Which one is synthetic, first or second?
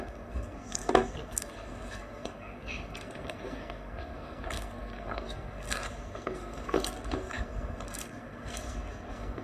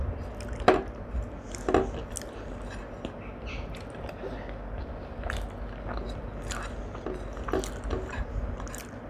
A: first